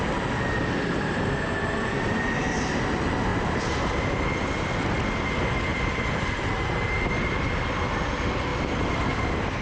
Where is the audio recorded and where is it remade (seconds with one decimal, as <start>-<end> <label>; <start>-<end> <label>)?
0.0-3.3 recorded; 3.3-4.4 remade; 4.4-5.7 recorded; 5.7-6.5 remade; 6.5-9.6 recorded